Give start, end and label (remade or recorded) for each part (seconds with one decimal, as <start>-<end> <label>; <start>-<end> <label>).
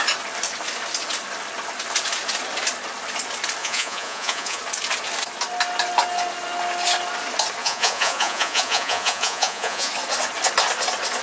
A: 0.0-3.6 recorded; 3.6-4.6 remade; 4.6-7.6 recorded; 7.6-9.9 remade; 9.9-11.2 recorded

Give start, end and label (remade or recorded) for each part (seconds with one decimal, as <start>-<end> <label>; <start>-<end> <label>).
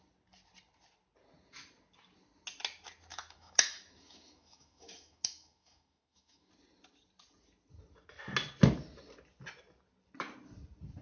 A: 0.0-3.1 recorded; 3.1-6.5 remade; 6.5-11.0 recorded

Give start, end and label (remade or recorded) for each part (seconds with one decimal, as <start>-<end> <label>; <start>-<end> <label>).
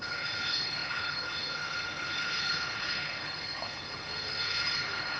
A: 0.0-5.2 remade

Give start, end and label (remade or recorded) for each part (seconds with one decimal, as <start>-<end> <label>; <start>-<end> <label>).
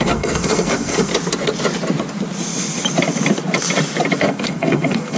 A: 0.0-1.1 remade; 1.1-4.2 recorded; 4.2-5.2 remade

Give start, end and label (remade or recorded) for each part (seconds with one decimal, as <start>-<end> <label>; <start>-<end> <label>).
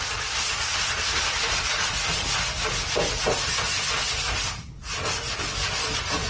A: 0.0-6.3 recorded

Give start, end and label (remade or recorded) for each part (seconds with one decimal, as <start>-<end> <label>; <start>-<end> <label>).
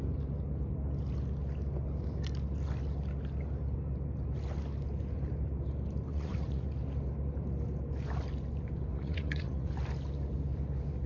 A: 0.0-6.1 recorded; 6.1-6.7 remade; 6.7-8.9 recorded; 8.9-9.7 remade; 9.7-11.1 recorded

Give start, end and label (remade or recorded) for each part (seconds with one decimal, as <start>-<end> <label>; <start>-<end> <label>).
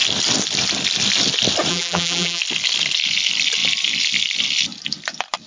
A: 0.0-1.7 recorded; 1.7-2.4 remade; 2.4-5.5 recorded